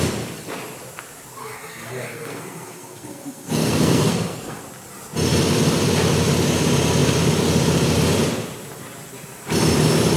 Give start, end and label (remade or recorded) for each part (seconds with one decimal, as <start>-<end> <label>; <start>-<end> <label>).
0.0-1.4 recorded; 1.4-4.6 remade; 4.6-10.2 recorded